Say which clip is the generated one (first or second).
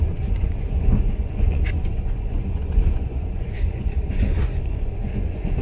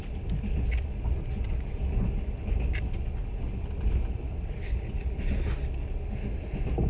first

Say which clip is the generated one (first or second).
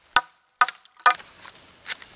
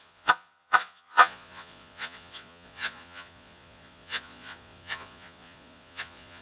second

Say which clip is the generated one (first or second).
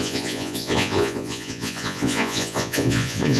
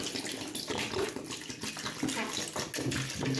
first